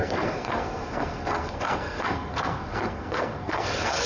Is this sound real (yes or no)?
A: no